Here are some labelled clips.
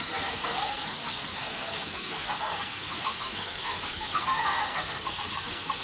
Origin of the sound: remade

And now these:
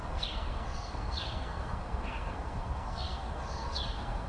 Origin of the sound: remade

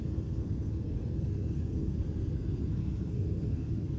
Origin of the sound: remade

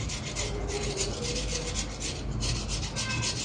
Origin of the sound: recorded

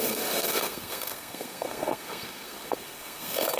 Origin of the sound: remade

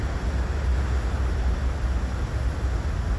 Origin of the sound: recorded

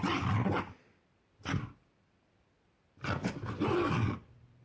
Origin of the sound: recorded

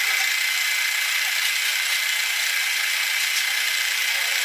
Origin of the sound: recorded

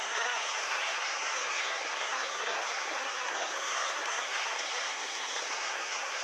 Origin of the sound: remade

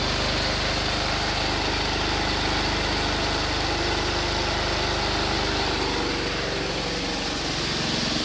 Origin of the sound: recorded